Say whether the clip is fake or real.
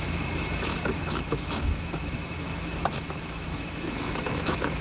fake